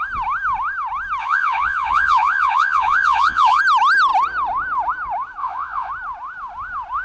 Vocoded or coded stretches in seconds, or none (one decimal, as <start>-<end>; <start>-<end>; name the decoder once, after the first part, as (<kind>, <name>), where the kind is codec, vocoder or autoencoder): 1.2-3.6 (vocoder, Vocos); 5.4-5.9

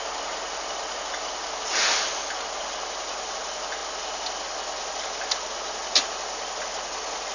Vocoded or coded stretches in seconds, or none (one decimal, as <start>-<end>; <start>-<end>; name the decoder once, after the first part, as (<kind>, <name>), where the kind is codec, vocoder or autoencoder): none

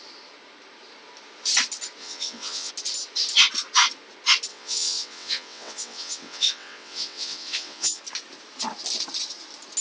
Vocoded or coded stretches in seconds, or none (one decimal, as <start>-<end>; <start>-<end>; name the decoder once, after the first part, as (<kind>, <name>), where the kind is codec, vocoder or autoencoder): 2.0-2.7 (vocoder, WaveNeXt); 4.5-8.0

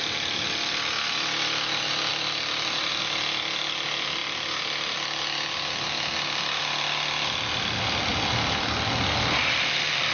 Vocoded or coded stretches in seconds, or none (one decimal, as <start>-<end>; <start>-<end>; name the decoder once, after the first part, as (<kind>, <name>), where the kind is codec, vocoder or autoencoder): 2.1-3.0 (vocoder, BigVGAN v2)

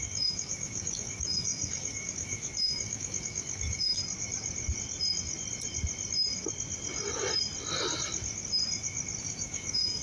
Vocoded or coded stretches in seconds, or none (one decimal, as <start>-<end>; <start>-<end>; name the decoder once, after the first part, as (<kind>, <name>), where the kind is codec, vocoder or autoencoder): 0.0-4.0 (autoencoder, DAC-VAE); 9.2-10.0

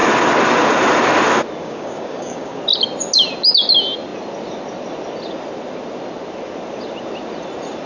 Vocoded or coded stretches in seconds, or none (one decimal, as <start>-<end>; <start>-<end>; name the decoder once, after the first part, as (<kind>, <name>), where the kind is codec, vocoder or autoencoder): 1.6-2.6 (codec, DAC)

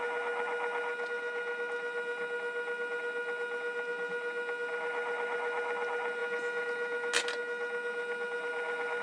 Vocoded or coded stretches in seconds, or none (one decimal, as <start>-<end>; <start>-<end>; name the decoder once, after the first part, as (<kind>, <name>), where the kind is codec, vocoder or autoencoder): none